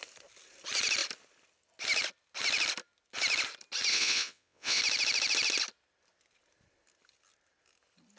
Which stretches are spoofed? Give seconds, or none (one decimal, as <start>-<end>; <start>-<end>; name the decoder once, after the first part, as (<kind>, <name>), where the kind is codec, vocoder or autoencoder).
3.9-4.8 (vocoder, WaveNeXt)